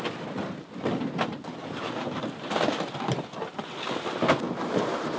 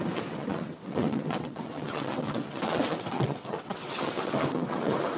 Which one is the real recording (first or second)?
first